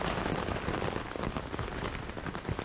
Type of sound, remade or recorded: recorded